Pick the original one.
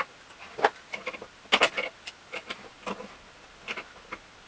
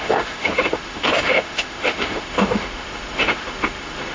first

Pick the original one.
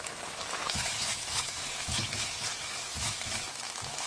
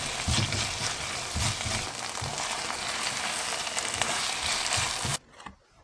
second